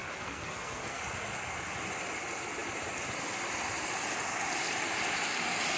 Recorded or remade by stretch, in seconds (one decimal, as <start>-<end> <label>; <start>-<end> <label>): 0.0-1.0 remade; 1.0-5.8 recorded